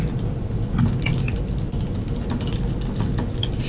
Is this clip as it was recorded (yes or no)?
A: yes